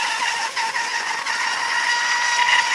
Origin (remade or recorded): remade